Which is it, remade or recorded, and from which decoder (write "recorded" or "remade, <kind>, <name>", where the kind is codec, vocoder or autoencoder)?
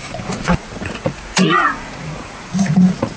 remade, vocoder, Vocos